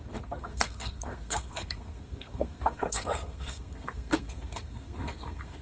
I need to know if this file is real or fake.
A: fake